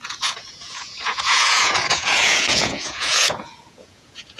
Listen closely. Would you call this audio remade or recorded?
remade